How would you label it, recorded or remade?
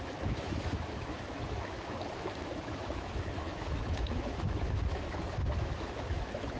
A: remade